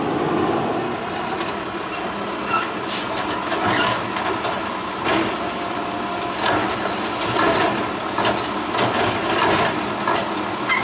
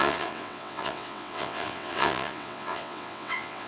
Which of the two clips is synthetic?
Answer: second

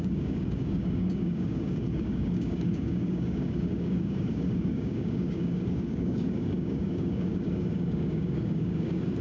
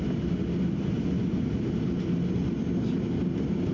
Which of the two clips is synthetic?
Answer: first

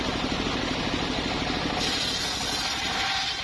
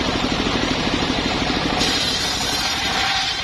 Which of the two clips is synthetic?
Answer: second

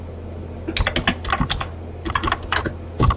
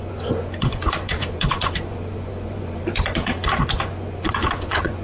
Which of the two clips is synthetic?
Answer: second